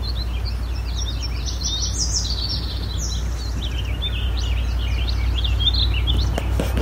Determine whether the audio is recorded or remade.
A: recorded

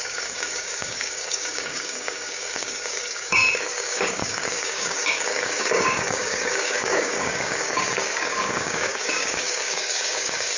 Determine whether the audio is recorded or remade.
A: remade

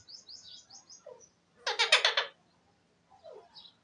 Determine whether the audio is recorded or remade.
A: recorded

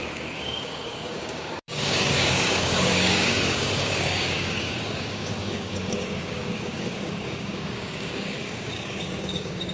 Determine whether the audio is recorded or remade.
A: remade